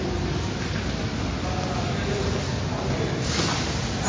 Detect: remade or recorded recorded